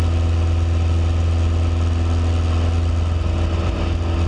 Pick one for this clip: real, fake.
real